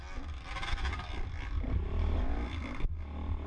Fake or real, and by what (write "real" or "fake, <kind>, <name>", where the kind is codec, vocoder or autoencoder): real